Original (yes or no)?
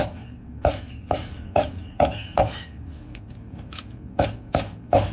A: no